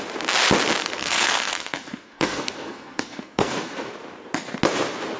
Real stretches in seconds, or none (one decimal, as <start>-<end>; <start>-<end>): 0.0-0.8; 3.9-5.2